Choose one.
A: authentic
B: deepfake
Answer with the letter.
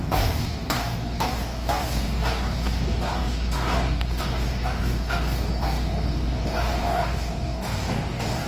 B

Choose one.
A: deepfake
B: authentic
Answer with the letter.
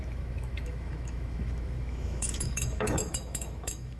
A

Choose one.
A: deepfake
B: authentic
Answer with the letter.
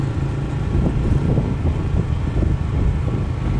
B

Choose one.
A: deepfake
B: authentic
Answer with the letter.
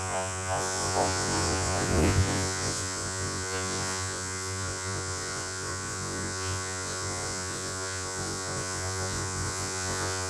A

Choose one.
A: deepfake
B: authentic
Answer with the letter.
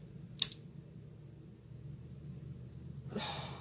B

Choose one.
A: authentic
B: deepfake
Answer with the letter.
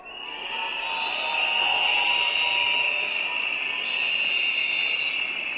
A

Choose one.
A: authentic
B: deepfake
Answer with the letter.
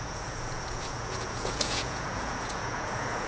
B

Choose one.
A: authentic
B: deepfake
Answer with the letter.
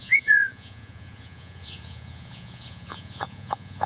B